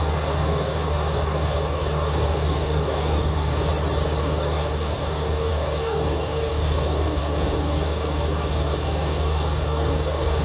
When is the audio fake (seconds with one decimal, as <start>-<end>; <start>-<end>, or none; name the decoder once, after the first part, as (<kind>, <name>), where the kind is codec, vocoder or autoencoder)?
0.0-3.7 (codec, DAC); 4.2-10.4